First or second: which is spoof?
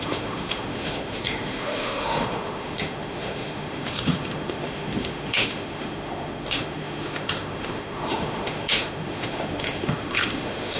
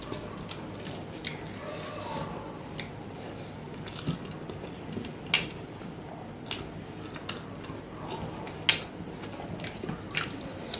first